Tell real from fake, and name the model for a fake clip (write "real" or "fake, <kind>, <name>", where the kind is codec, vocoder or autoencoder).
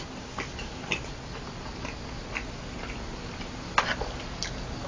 real